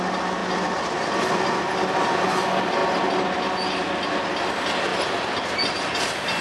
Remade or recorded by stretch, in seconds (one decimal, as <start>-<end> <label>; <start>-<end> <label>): 0.0-6.4 recorded